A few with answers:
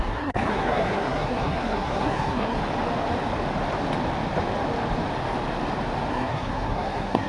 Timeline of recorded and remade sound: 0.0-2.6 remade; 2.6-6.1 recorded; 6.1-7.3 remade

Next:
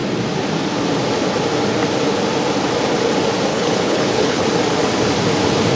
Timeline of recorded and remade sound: 0.0-3.5 recorded; 3.5-4.4 remade; 4.4-5.8 recorded